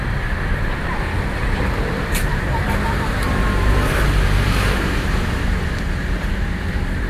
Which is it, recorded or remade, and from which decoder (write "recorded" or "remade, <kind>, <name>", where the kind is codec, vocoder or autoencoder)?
remade, vocoder, BigVGAN v2